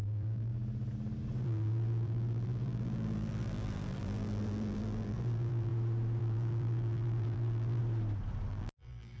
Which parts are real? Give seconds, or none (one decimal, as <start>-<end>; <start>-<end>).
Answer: 0.5-1.4; 5.7-6.2; 7.8-8.5